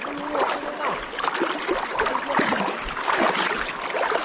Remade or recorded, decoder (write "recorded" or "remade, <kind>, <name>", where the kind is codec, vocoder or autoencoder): recorded